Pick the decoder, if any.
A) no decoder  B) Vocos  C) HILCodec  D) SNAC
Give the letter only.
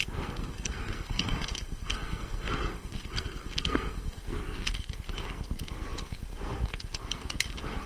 D